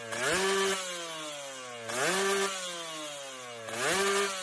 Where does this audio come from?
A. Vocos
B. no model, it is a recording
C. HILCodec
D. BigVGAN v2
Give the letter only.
B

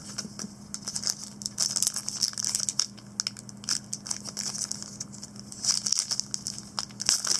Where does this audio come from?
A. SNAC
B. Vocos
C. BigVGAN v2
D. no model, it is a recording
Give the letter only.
D